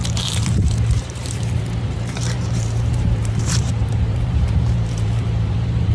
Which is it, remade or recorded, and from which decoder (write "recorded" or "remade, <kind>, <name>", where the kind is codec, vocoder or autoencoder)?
remade, vocoder, BigVGAN v2